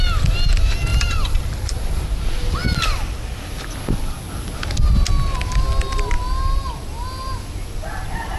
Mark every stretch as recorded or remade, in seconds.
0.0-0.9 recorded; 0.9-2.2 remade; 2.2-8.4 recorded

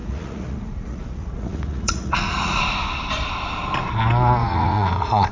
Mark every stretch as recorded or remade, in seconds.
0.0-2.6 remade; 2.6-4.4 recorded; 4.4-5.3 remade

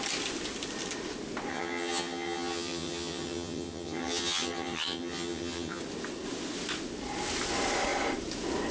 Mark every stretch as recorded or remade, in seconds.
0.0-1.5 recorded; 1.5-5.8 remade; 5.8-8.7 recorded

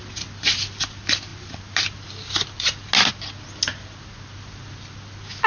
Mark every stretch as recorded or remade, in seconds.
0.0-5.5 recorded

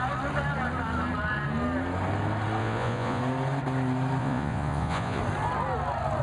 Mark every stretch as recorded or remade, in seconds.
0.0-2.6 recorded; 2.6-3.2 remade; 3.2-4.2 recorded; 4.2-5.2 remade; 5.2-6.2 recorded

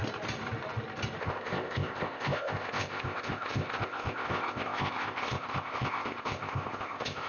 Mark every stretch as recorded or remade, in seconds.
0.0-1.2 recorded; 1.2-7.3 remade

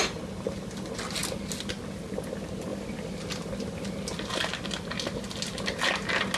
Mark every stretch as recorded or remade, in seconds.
0.0-6.4 recorded

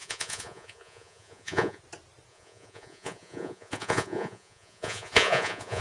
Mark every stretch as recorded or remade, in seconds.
0.0-1.8 remade; 1.8-2.3 recorded; 2.3-5.8 remade